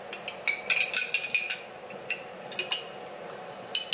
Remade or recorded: recorded